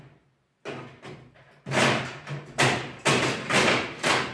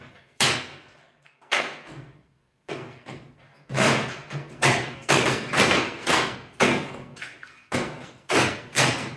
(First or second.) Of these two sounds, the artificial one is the second